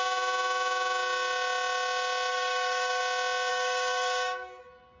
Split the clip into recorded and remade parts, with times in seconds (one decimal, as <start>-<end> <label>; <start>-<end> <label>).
0.0-2.3 recorded; 2.3-3.0 remade; 3.0-3.5 recorded; 3.5-4.6 remade; 4.6-5.0 recorded